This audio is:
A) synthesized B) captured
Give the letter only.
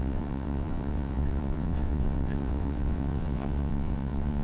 A